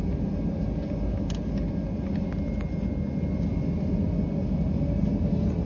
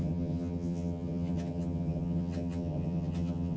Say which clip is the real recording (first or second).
first